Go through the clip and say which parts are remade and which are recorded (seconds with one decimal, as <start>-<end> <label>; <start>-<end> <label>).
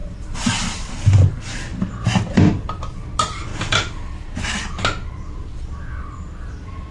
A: 0.0-1.7 remade; 1.7-2.5 recorded; 2.5-3.5 remade; 3.5-6.4 recorded; 6.4-6.9 remade